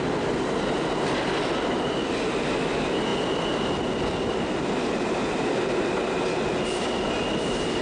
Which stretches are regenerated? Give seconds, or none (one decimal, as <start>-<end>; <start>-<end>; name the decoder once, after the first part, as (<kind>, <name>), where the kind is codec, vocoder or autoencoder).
5.2-6.0 (vocoder, BigVGAN v2)